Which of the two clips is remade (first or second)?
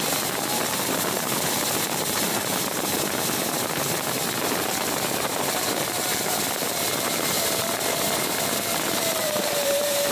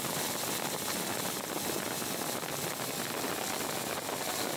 first